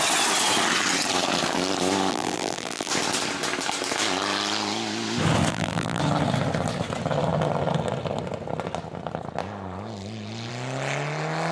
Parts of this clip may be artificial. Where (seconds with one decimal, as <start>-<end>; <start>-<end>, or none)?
2.1-2.9; 5.5-6.0